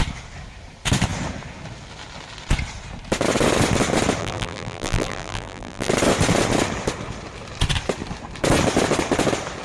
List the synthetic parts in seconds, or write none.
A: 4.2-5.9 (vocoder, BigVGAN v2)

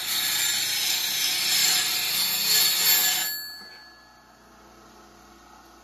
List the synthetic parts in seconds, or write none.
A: 1.6-2.1 (vocoder, BigVGAN v2)

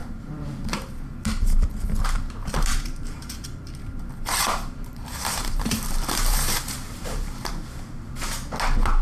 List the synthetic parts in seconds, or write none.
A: 0.0-0.8 (vocoder, BigVGAN v2); 2.4-7.5

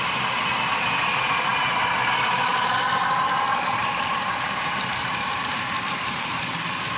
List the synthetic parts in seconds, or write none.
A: 3.8-6.4 (vocoder, BigVGAN v2)